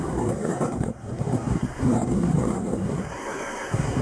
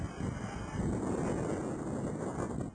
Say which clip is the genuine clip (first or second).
second